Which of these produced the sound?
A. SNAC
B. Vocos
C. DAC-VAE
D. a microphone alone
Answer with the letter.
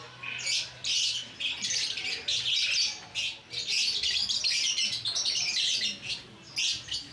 D